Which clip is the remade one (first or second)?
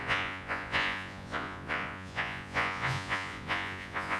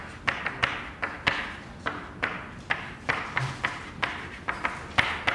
first